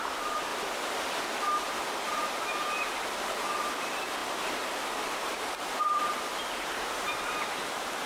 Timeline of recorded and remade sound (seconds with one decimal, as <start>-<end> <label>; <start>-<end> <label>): 0.0-0.5 remade; 0.5-1.5 recorded; 1.5-4.2 remade; 4.2-5.1 recorded; 5.1-8.1 remade